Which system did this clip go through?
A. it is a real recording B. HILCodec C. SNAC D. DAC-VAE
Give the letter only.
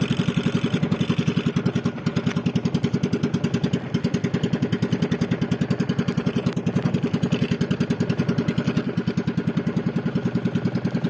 A